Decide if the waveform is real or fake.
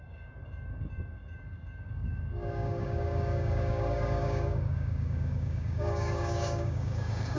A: fake